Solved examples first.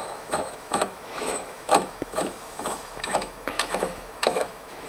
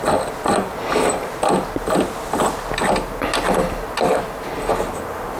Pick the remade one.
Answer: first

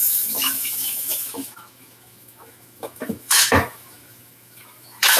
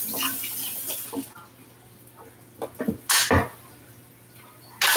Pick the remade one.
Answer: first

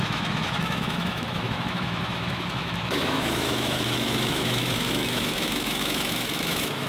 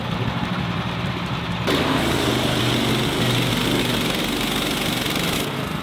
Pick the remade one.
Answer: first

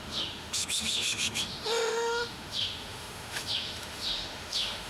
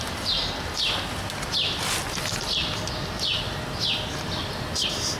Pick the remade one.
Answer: first